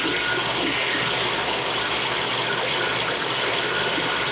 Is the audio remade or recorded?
recorded